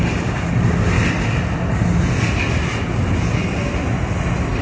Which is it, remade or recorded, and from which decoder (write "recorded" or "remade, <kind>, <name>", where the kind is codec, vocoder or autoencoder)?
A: recorded